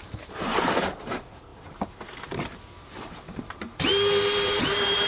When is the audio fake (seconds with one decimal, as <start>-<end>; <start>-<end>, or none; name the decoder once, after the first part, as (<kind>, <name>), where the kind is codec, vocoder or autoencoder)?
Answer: 0.0-1.5 (vocoder, BigVGAN v2); 3.1-5.1